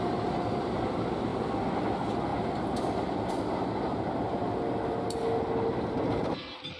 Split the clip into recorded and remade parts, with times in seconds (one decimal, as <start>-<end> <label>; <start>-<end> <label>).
0.0-6.8 recorded